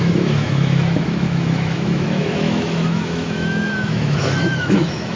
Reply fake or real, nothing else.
fake